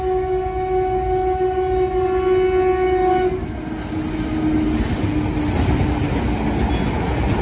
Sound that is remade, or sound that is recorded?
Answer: recorded